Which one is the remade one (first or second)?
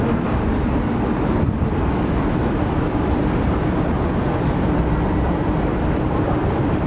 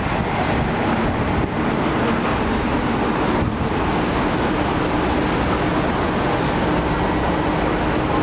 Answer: first